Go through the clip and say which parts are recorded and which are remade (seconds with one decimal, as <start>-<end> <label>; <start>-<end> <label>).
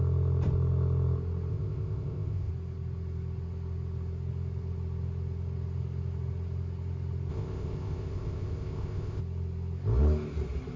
0.0-1.5 recorded; 1.5-2.5 remade; 2.5-7.3 recorded; 7.3-9.2 remade; 9.2-10.8 recorded